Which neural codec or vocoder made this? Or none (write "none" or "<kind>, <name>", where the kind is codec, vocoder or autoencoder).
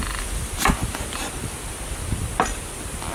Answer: none